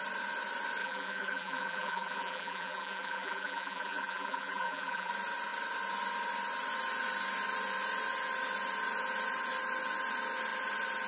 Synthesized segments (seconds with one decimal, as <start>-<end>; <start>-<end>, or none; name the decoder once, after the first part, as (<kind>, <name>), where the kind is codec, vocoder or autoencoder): 0.8-5.1 (vocoder, BigVGAN v2)